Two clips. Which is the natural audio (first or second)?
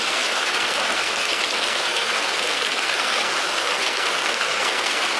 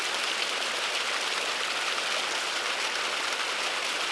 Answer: second